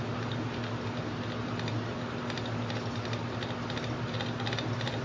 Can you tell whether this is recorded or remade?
recorded